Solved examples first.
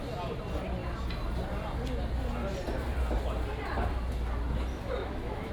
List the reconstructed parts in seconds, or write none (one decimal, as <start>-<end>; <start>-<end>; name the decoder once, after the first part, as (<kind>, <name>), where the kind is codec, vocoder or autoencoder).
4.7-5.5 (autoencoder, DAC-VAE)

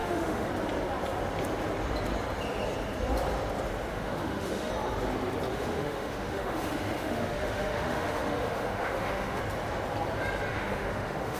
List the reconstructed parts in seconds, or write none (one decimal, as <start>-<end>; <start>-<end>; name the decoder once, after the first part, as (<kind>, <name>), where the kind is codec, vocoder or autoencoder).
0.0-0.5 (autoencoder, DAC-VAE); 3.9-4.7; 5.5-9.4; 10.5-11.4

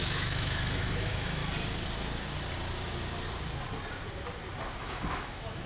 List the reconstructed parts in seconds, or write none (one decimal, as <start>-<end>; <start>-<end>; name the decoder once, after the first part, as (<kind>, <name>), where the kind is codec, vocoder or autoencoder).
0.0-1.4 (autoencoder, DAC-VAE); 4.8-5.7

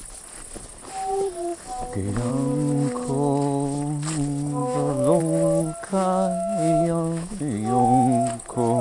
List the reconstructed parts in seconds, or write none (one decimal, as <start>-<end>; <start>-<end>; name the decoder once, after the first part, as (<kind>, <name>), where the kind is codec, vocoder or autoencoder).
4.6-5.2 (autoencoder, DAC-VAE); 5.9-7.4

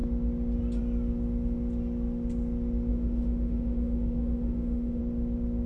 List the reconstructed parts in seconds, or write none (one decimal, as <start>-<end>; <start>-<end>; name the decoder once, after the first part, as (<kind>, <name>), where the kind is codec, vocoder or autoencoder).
2.9-5.0 (autoencoder, DAC-VAE)

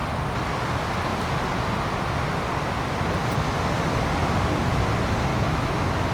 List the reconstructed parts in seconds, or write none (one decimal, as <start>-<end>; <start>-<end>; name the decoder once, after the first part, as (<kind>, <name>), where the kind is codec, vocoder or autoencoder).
5.3-6.1 (autoencoder, DAC-VAE)

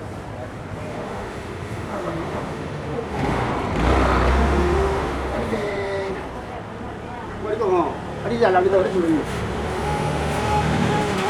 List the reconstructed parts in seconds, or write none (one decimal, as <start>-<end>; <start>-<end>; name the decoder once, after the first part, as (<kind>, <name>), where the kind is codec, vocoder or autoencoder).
0.9-3.5 (autoencoder, DAC-VAE); 4.3-6.1; 8.7-11.3